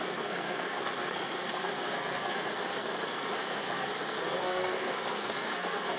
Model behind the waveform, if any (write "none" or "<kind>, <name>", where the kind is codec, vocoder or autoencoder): codec, SNAC